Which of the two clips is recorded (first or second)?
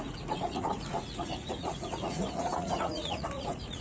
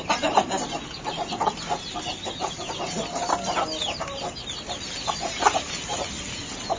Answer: second